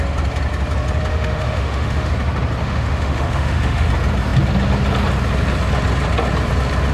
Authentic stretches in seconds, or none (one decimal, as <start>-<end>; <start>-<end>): 0.0-1.1; 2.1-2.6; 3.9-6.9